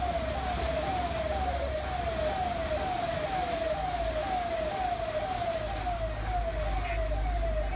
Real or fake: real